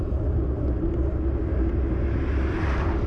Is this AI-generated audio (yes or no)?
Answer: no